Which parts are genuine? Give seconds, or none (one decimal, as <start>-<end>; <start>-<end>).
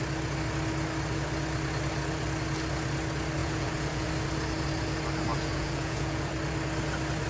0.0-3.4; 4.1-5.3; 6.3-7.3